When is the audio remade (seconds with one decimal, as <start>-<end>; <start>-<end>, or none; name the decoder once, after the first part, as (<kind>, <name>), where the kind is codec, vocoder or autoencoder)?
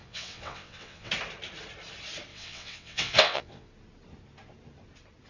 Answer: 0.0-1.1 (vocoder, WaveNeXt); 2.3-3.7